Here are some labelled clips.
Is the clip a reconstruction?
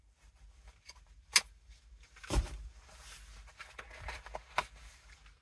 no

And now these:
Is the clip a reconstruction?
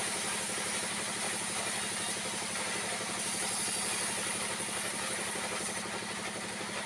no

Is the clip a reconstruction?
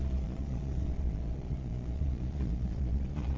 yes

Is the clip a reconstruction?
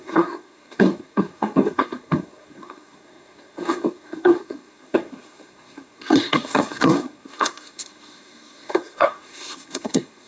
yes